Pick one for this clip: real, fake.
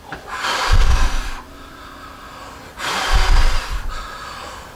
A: real